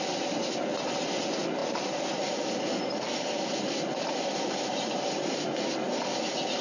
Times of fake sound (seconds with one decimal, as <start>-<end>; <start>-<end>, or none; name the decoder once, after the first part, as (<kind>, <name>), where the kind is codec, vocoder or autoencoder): none

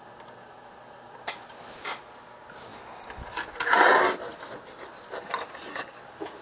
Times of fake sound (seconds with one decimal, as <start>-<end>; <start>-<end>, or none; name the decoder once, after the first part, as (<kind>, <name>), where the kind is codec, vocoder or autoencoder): none

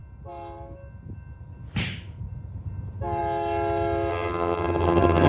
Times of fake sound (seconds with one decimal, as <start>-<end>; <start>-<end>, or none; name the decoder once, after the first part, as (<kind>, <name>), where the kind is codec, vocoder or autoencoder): 4.1-5.3 (vocoder, HiFi-GAN)

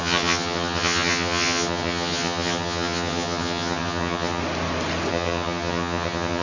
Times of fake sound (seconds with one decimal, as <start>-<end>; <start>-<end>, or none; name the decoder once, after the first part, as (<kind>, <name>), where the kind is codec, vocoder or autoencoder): 0.0-4.4 (vocoder, HiFi-GAN); 5.1-6.4

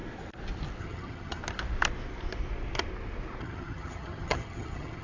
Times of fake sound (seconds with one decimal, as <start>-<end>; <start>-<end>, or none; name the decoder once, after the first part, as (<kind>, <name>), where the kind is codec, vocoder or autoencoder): 0.8-1.4 (vocoder, HiFi-GAN); 3.4-5.0

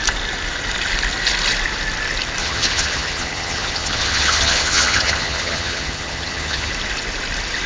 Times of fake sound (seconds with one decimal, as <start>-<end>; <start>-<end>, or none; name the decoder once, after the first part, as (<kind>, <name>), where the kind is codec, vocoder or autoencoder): 2.4-6.7 (vocoder, HiFi-GAN)

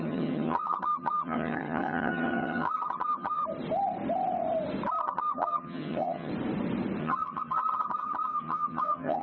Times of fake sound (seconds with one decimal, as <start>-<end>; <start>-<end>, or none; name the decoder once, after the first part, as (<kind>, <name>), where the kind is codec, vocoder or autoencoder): 0.0-3.4 (vocoder, HiFi-GAN); 5.0-6.3; 7.0-9.2

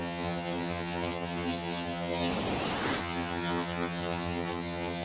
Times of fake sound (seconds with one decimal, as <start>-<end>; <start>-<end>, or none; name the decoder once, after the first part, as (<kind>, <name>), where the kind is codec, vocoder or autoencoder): 0.0-2.3 (vocoder, HiFi-GAN); 3.0-5.0